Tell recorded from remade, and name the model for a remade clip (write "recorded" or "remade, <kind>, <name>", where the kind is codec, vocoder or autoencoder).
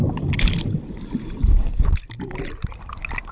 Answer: recorded